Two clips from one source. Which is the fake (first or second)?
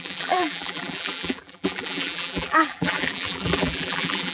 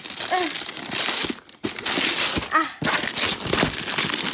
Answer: first